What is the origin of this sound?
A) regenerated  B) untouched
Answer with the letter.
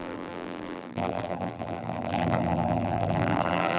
A